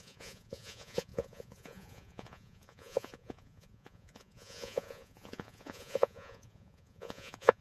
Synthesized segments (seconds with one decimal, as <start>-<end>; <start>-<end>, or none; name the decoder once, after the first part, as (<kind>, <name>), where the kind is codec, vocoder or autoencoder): 0.0-7.6 (vocoder, Vocos)